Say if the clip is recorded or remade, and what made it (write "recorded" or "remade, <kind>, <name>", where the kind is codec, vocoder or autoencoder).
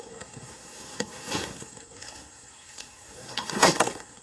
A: remade, codec, SNAC